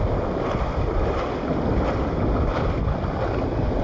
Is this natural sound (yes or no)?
yes